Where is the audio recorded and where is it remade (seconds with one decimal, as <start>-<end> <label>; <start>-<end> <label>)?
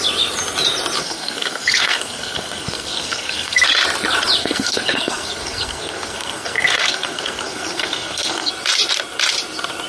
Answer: 0.0-1.0 recorded; 1.0-3.6 remade; 3.6-4.4 recorded; 4.4-8.5 remade; 8.5-9.9 recorded